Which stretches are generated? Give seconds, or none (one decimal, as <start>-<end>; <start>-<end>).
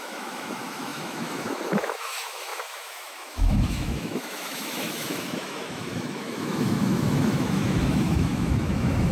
0.0-9.1